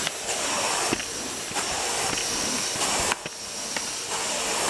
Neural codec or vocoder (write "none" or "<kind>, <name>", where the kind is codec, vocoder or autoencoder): none